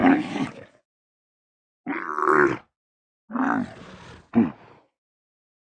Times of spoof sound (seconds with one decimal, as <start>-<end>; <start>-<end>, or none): 0.0-1.1